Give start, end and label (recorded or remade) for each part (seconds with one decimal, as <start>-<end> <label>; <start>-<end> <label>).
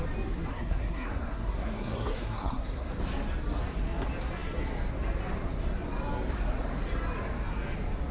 0.0-0.5 recorded; 0.5-2.9 remade; 2.9-8.1 recorded